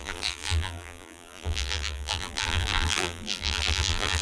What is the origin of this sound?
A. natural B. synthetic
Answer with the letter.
B